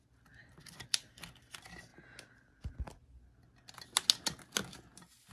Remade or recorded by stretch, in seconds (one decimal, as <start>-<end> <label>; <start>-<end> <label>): 0.0-0.4 recorded; 0.4-1.4 remade; 1.4-5.3 recorded